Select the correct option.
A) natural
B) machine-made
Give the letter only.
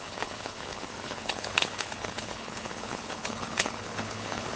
B